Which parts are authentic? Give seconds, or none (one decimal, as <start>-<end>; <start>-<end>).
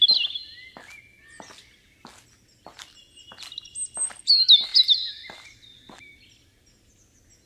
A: 0.0-7.5